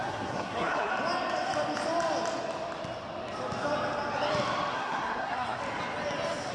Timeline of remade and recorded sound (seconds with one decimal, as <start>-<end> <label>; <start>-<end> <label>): 0.0-0.9 remade; 0.9-4.7 recorded; 4.7-5.6 remade; 5.6-6.5 recorded